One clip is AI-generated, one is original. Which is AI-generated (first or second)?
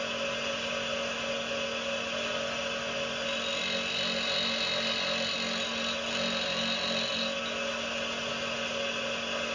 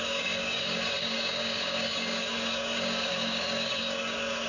second